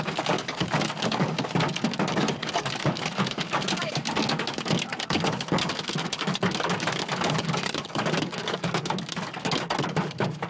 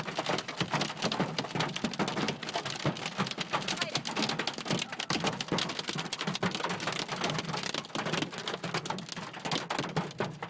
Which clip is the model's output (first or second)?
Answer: first